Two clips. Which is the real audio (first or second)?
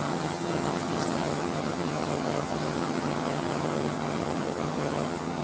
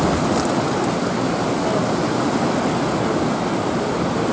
second